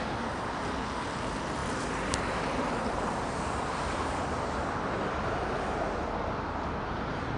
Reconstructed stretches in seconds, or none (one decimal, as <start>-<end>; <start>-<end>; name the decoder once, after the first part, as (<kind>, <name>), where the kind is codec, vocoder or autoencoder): 1.6-4.4 (vocoder, BigVGAN v2)

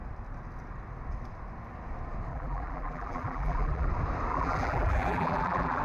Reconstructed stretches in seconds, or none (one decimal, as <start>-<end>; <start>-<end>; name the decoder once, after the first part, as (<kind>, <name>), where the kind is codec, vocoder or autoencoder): 2.3-3.9 (vocoder, BigVGAN v2); 4.3-5.8

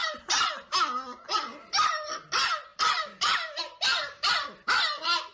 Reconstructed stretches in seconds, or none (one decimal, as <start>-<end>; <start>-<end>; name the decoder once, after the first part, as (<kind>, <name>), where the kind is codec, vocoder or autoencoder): 0.0-0.5 (vocoder, BigVGAN v2); 2.7-4.3

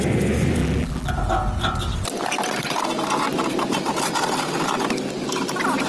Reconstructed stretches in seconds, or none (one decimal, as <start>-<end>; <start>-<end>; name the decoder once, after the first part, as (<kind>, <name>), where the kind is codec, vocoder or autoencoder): 0.6-1.1 (vocoder, BigVGAN v2)

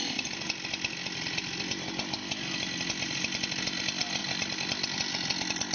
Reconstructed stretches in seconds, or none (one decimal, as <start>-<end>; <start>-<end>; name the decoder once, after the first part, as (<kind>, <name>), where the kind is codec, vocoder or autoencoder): none

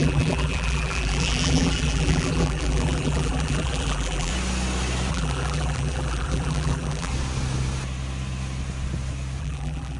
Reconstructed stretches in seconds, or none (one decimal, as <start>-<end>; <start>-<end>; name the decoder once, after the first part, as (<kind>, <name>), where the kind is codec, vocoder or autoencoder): 0.0-4.3 (vocoder, BigVGAN v2); 5.1-7.1; 9.4-10.0

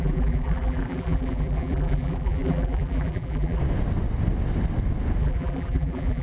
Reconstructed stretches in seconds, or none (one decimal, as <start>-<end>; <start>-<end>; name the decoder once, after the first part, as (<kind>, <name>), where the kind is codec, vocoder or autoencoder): 0.0-3.6 (vocoder, BigVGAN v2); 5.2-6.2